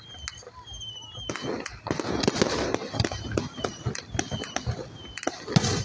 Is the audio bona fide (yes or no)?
yes